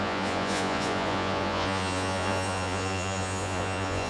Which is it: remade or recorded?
remade